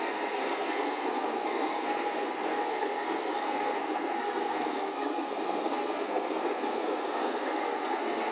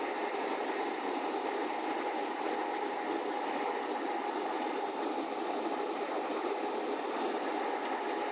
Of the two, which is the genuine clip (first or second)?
second